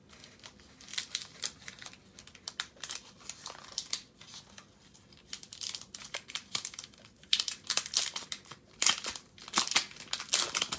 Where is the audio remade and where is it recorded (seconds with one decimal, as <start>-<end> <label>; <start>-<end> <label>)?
0.0-6.0 recorded; 6.0-7.6 remade; 7.6-10.8 recorded